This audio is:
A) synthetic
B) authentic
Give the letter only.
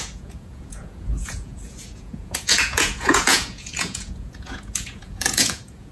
A